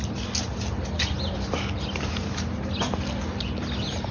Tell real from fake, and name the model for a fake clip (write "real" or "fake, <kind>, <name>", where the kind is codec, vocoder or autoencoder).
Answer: real